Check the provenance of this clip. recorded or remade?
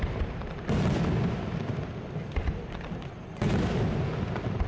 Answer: recorded